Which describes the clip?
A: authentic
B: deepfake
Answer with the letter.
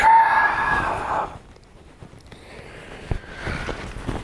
A